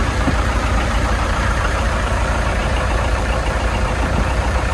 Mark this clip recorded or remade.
remade